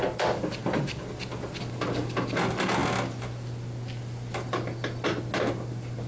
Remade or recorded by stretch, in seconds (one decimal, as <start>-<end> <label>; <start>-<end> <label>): 0.0-6.1 recorded